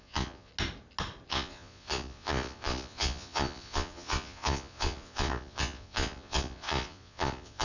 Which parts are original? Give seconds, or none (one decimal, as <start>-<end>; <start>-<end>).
0.5-1.3